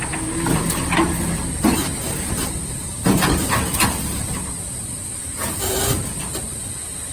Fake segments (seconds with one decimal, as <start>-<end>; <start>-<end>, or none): none